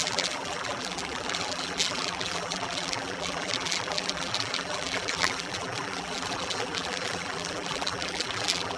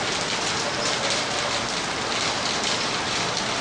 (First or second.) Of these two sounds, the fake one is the first